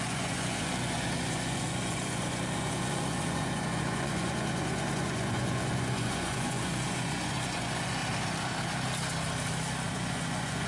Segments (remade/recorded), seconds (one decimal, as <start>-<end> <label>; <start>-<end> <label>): 0.0-8.0 remade; 8.0-9.9 recorded; 9.9-10.7 remade